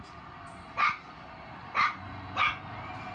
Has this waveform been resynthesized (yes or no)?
no